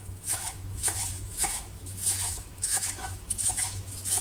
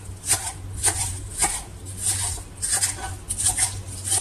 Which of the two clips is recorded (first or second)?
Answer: second